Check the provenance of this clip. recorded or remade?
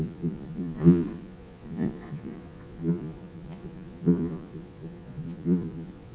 remade